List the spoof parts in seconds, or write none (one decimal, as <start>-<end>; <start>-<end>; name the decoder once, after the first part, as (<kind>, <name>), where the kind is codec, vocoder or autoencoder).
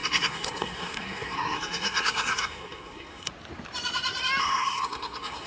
0.0-3.3 (codec, SNAC); 4.4-5.5